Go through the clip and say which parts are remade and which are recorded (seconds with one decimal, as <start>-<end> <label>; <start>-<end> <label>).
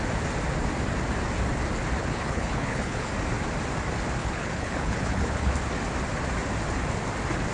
0.0-2.0 recorded; 2.0-3.1 remade; 3.1-4.2 recorded; 4.2-5.5 remade; 5.5-7.5 recorded